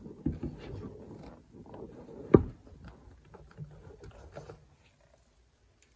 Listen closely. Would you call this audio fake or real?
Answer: real